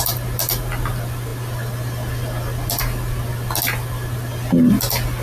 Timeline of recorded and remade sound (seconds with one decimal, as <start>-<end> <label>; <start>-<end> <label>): 0.0-5.2 recorded

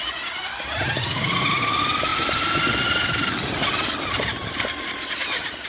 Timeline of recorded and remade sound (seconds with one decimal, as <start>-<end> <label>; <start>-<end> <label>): 0.0-5.7 recorded